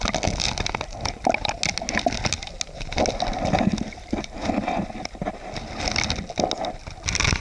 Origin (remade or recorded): recorded